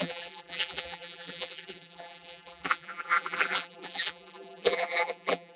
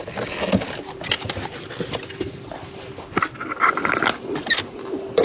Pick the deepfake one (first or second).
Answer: first